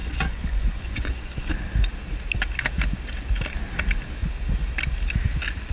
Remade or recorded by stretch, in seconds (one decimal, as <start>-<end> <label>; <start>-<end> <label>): 0.0-1.5 remade; 1.5-5.7 recorded